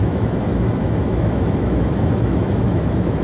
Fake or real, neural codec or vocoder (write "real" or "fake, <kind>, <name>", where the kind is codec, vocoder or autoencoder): fake, autoencoder, DAC-VAE